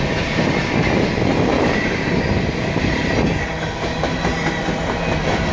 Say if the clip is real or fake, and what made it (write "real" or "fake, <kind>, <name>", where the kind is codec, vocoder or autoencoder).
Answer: real